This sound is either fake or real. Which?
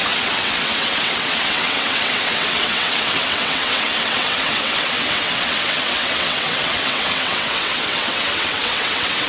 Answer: fake